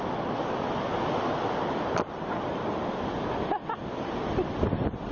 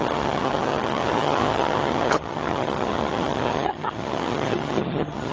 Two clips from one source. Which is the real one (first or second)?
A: first